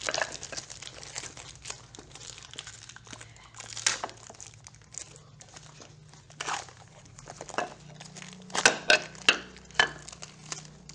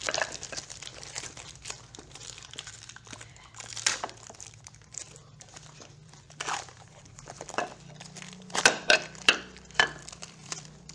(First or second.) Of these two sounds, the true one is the first